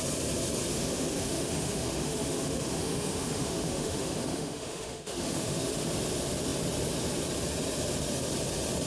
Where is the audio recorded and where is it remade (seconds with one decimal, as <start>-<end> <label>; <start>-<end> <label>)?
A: 0.0-0.7 recorded; 0.7-5.9 remade; 5.9-8.9 recorded